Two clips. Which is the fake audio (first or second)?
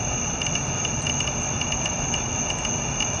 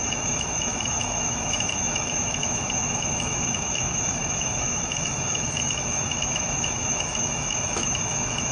second